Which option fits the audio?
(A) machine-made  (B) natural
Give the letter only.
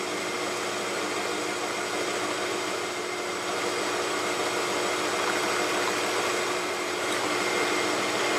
B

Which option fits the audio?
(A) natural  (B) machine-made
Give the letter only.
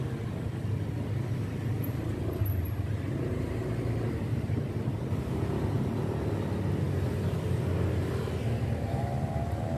A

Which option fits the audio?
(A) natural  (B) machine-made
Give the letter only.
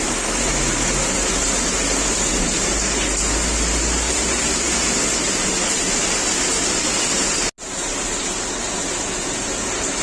A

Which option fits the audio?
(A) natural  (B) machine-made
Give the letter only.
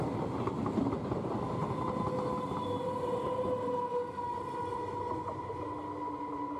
A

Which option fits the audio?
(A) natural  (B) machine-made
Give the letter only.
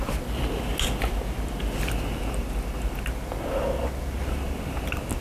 A